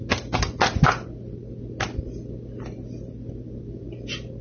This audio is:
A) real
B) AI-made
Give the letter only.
A